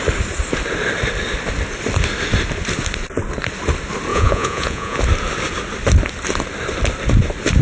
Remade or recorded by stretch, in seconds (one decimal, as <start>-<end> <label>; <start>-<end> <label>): 0.0-4.1 recorded; 4.1-5.0 remade; 5.0-7.6 recorded